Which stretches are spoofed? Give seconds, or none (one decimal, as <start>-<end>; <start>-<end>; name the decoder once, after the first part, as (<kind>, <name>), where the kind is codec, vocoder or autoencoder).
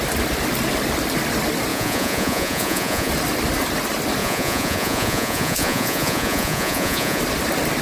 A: 1.7-3.1 (vocoder, Vocos); 4.2-7.2